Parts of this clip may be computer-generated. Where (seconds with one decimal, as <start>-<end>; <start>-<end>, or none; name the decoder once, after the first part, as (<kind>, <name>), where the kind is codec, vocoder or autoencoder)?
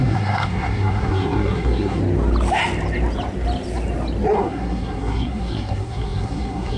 0.0-2.0 (codec, SNAC); 4.3-6.8